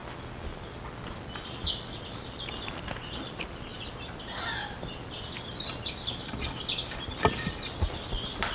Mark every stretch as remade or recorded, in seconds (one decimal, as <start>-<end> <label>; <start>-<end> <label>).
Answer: 0.0-3.7 recorded; 3.7-5.8 remade; 5.8-8.5 recorded